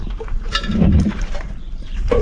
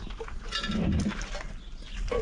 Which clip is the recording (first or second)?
second